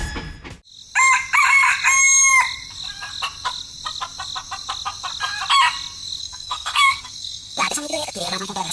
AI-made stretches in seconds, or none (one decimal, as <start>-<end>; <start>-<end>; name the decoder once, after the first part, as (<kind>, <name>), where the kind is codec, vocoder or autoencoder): 6.2-8.7 (codec, SNAC)